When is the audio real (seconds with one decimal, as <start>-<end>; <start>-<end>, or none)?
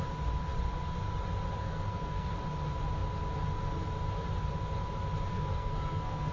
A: 0.0-1.6; 2.3-5.3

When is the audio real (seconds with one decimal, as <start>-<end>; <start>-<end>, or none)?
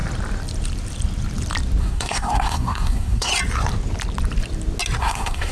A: 0.0-1.8; 3.3-5.0